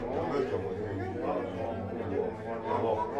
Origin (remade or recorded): recorded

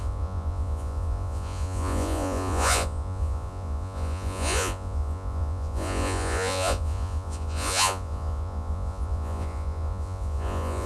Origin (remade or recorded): remade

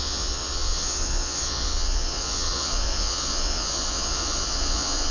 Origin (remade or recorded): remade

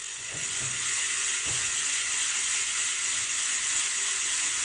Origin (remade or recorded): remade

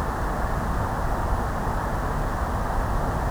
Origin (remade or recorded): recorded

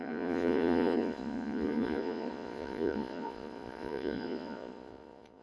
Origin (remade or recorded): remade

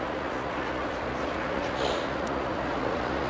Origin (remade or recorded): remade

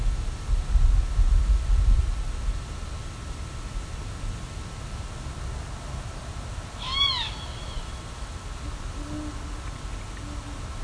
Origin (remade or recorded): recorded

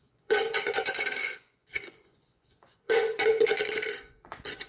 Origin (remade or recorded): remade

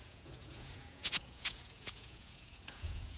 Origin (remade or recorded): remade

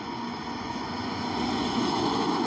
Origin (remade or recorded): remade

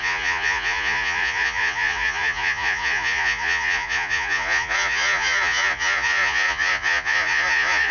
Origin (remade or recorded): remade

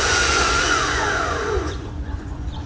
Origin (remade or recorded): remade